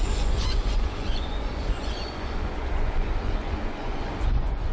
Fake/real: fake